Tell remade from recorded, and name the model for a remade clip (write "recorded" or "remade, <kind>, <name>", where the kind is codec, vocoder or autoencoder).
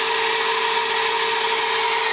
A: recorded